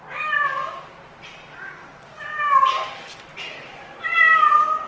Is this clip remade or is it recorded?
recorded